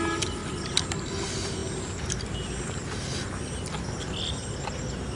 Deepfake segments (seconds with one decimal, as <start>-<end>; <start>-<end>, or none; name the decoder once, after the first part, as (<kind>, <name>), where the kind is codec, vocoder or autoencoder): none